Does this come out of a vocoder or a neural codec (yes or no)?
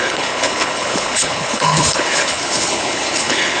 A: yes